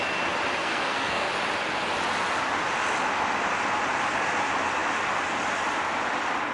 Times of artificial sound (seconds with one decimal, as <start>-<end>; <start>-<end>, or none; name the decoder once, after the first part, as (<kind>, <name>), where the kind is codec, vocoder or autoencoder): 0.6-1.3 (codec, SNAC)